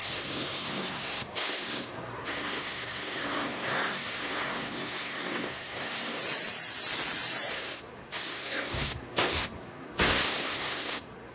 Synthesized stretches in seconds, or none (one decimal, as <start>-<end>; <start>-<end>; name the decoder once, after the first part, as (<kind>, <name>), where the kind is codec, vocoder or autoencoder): 0.0-6.2 (codec, SNAC); 7.5-11.3

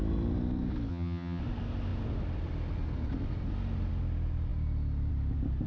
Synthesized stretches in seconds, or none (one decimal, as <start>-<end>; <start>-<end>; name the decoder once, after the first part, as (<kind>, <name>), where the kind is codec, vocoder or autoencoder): 0.9-1.4 (vocoder, HiFi-GAN)

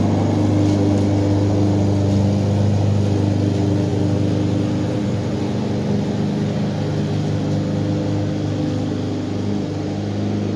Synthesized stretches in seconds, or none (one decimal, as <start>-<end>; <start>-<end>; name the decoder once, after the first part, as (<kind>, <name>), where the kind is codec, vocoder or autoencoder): none

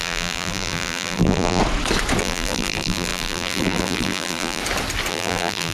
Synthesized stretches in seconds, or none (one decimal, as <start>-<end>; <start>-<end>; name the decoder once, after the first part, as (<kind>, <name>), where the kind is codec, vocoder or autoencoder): 0.0-1.6 (vocoder, BigVGAN v2); 2.2-4.6; 5.1-5.7

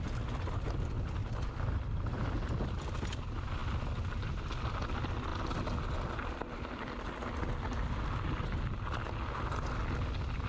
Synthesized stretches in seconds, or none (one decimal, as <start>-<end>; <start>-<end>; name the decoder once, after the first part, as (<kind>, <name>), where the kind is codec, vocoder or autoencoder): none

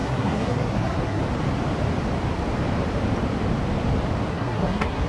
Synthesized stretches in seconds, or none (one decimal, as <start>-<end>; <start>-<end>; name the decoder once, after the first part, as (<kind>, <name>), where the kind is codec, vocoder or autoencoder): 0.0-1.2 (codec, SNAC); 4.3-5.1

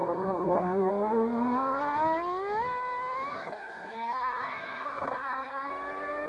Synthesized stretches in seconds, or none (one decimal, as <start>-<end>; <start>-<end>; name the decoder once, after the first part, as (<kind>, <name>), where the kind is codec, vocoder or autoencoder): 0.0-0.9 (codec, SNAC); 3.3-5.7